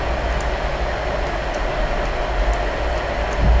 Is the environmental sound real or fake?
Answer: real